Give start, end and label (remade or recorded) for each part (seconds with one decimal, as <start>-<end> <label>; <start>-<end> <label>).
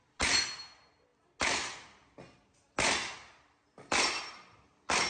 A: 0.0-5.1 recorded